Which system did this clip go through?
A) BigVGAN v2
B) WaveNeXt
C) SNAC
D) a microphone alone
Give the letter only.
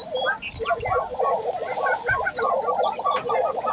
D